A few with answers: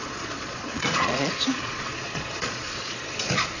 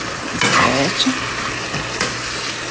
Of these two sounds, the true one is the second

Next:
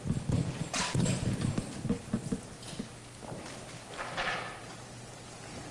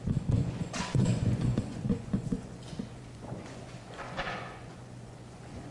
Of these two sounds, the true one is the first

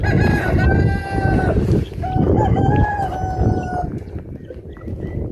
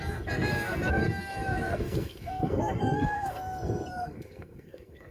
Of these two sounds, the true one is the first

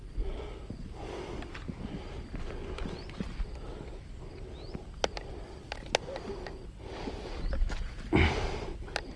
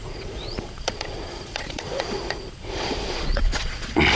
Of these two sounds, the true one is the first